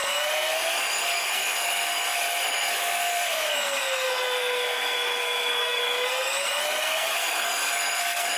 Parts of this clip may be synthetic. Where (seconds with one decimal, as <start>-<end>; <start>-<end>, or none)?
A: 0.0-8.4